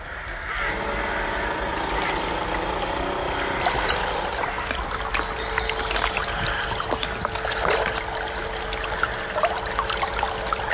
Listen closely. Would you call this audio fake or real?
real